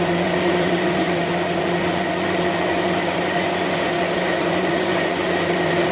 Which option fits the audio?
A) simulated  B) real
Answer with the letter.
A